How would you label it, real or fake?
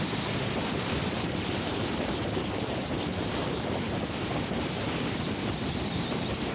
fake